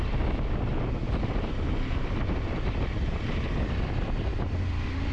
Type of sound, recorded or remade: recorded